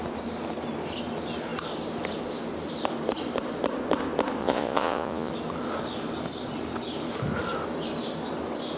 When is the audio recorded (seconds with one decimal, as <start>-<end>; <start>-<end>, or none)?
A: 0.0-4.4; 5.3-8.8